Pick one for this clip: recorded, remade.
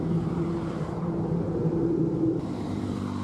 remade